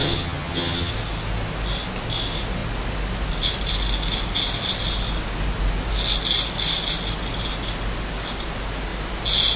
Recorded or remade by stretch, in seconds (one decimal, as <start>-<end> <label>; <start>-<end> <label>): 0.0-0.9 remade; 0.9-9.6 recorded